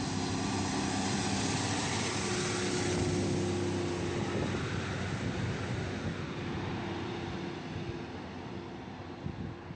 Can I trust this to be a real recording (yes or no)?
yes